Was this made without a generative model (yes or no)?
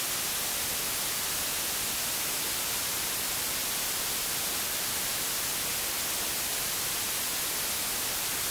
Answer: yes